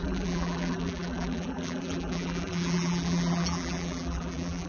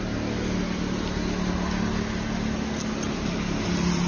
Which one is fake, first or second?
first